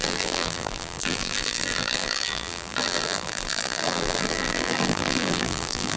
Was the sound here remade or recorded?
remade